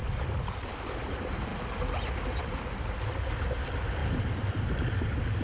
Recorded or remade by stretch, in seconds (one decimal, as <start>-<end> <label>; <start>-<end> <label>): 0.0-0.8 remade; 0.8-4.0 recorded; 4.0-4.7 remade; 4.7-5.4 recorded